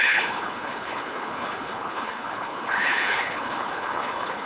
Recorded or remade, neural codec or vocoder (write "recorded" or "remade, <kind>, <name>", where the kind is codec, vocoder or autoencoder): remade, codec, HILCodec